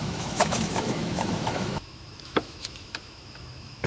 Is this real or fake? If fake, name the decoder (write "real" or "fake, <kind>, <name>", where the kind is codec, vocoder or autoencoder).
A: fake, autoencoder, DAC-VAE